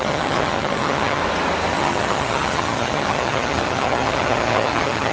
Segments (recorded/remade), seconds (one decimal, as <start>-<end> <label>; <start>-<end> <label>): 0.0-1.2 remade; 1.2-1.7 recorded; 1.7-5.1 remade